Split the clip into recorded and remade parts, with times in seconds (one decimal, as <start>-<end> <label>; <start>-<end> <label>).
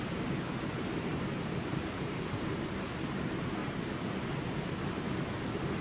0.0-1.1 recorded; 1.1-2.7 remade; 2.7-5.8 recorded